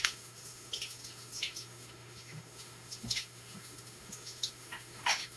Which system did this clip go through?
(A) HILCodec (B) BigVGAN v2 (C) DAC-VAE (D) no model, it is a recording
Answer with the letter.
C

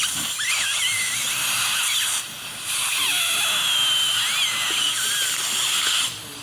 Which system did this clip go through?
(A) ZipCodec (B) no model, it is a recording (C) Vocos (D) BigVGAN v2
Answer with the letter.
B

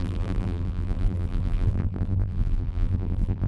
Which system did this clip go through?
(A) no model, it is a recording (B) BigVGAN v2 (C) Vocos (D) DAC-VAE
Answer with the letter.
B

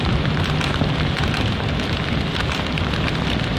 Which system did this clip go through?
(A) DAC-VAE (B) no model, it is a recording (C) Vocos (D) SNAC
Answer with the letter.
B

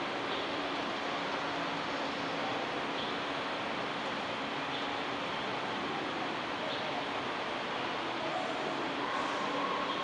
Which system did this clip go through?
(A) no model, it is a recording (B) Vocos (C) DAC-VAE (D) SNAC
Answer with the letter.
A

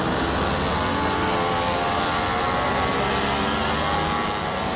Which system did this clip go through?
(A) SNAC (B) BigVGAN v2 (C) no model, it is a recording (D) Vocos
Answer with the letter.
C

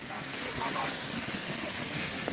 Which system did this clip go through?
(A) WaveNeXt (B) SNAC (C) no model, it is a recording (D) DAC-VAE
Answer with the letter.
B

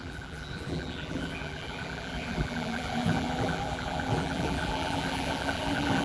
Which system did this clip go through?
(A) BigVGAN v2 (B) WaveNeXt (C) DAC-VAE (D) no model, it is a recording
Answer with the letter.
A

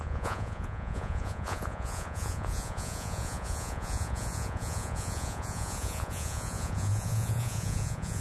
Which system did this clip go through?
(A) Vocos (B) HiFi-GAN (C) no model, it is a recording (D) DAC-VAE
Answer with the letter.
A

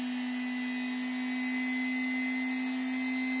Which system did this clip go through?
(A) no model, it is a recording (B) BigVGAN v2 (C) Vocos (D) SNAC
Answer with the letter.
A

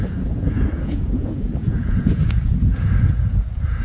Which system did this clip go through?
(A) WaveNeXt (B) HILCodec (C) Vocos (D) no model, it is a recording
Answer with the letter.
C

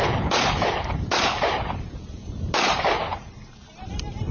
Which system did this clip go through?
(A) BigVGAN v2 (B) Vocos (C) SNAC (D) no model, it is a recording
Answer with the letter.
A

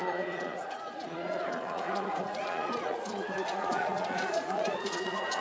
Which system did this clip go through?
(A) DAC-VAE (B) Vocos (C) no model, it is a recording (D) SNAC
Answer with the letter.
B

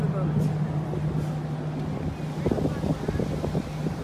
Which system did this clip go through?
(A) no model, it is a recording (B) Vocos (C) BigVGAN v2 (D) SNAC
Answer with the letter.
A